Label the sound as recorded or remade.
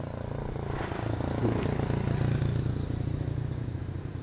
recorded